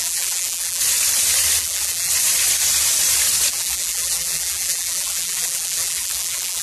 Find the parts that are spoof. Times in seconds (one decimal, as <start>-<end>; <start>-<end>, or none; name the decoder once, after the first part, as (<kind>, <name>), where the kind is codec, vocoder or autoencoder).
0.0-0.8 (vocoder, BigVGAN v2); 1.6-2.1; 3.5-6.6